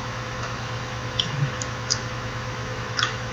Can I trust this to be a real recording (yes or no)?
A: no